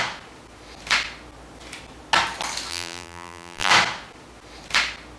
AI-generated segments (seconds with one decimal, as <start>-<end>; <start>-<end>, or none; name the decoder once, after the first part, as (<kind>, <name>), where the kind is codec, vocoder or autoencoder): 2.7-3.7 (vocoder, BigVGAN v2)